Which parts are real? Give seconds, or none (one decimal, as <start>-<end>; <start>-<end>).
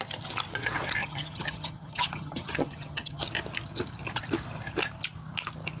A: 0.0-1.0; 3.2-5.8